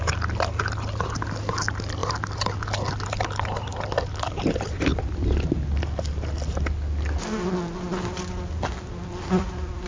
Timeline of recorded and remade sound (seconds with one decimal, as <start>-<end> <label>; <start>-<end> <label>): 0.0-9.9 recorded